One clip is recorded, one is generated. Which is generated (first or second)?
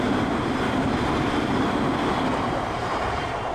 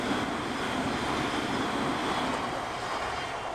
first